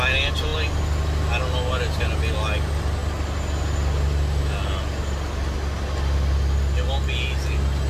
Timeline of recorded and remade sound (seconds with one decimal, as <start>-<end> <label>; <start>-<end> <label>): 0.0-7.9 recorded